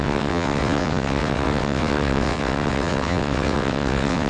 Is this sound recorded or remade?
remade